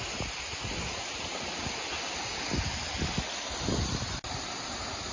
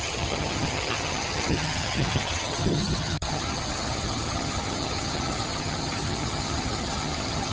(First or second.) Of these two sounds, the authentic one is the first